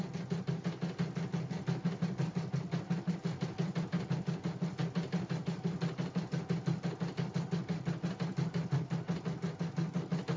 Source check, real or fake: real